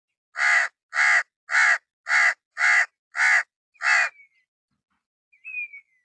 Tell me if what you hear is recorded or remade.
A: recorded